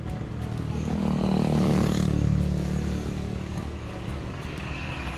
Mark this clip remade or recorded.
remade